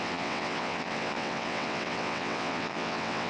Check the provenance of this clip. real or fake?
fake